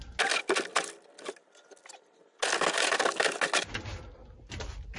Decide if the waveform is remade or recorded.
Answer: recorded